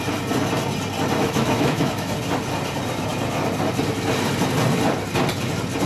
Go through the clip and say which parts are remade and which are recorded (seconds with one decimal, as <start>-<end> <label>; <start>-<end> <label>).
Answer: 0.0-1.2 recorded; 1.2-2.1 remade; 2.1-5.9 recorded